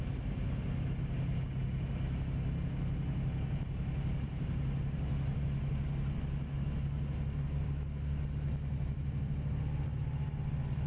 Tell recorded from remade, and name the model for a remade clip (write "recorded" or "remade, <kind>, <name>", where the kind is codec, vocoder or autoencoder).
recorded